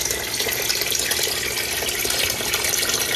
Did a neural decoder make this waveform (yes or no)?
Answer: no